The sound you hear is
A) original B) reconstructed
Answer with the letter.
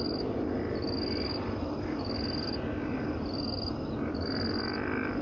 A